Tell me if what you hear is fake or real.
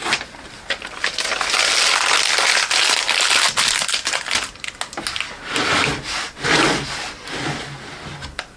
real